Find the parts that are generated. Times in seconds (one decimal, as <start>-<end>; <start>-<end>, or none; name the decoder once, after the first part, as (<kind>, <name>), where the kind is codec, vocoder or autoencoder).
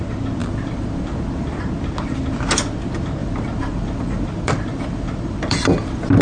0.4-1.6 (vocoder, BigVGAN v2); 3.2-6.2